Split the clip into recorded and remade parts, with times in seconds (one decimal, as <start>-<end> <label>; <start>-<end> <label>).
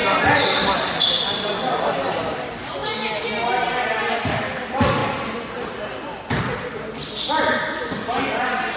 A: 0.0-8.8 recorded